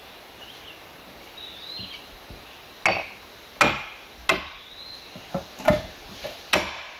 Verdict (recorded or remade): recorded